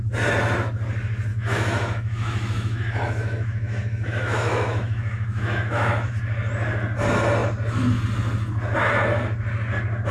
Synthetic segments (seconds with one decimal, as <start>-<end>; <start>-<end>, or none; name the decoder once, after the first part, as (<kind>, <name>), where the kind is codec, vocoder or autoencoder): 1.3-6.1 (autoencoder, DAC-VAE)